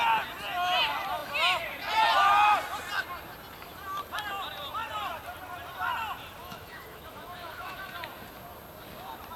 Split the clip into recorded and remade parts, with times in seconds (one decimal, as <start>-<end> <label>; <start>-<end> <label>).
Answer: 0.0-6.4 recorded; 6.4-7.9 remade; 7.9-9.4 recorded